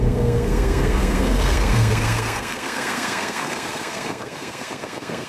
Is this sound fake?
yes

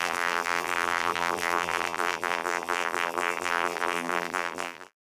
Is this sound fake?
yes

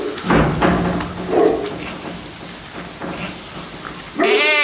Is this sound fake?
no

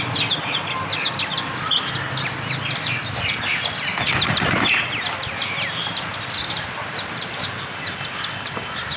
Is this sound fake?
no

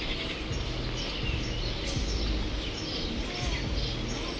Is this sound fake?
no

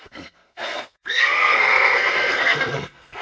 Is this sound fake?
yes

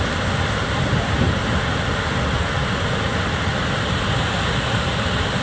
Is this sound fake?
no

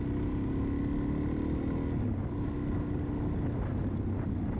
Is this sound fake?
no